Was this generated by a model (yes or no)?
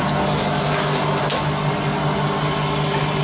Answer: no